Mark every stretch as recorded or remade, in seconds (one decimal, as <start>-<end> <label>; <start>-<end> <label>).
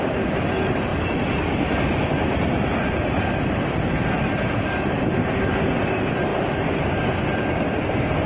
0.0-8.3 recorded